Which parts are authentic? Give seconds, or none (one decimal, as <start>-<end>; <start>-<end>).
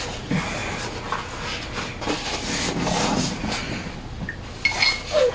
0.0-5.3